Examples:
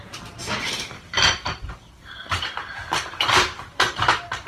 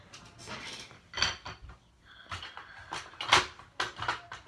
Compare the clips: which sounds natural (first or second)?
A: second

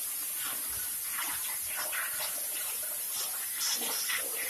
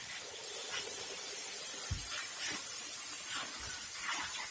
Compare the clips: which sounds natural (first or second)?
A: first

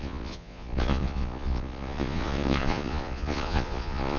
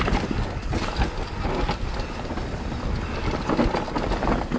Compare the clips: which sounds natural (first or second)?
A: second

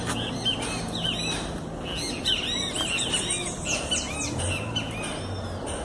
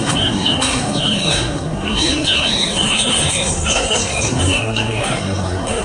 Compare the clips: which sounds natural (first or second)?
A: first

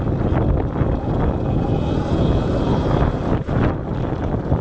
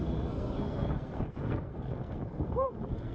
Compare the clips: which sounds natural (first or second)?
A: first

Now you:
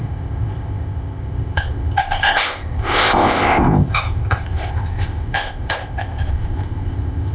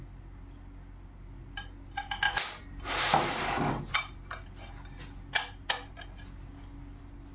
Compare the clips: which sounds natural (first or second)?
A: second